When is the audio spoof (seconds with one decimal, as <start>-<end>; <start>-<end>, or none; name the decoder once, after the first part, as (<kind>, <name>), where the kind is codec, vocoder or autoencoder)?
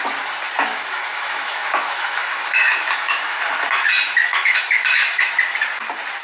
0.7-3.4 (autoencoder, DAC-VAE); 4.2-5.3